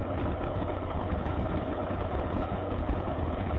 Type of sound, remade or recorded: remade